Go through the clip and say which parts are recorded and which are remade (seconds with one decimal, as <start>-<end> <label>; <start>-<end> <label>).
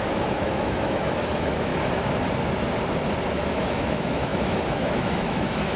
0.0-1.7 remade; 1.7-3.3 recorded; 3.3-5.8 remade